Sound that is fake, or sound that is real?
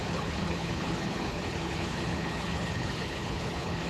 fake